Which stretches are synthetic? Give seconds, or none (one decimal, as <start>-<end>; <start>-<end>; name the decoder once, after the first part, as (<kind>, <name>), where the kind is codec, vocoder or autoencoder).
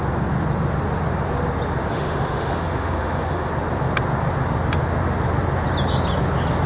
1.9-3.5 (autoencoder, DAC-VAE)